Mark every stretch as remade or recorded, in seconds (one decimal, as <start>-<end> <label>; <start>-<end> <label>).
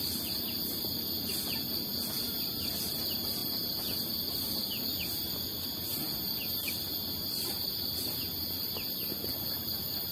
0.0-10.1 recorded